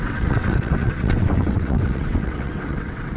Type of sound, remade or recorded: remade